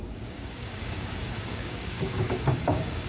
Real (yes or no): no